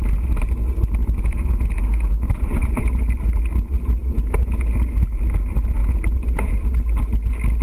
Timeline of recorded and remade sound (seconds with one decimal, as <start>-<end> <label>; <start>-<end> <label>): 0.0-1.0 recorded; 1.0-3.0 remade; 3.0-4.0 recorded; 4.0-4.7 remade; 4.7-5.8 recorded; 5.8-6.5 remade; 6.5-7.6 recorded